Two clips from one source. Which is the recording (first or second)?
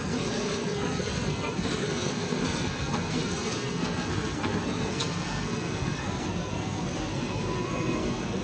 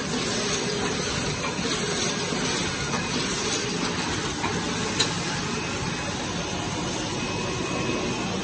second